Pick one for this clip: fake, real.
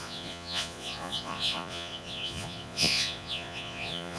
fake